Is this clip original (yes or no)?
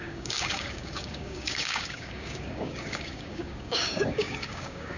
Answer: no